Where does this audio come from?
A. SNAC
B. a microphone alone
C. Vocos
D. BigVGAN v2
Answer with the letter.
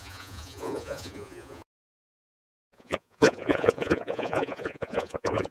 C